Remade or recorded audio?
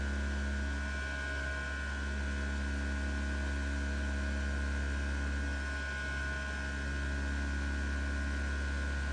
recorded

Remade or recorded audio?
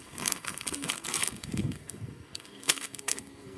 remade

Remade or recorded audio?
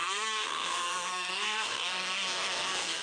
remade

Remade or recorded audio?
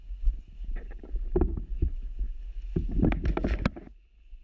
recorded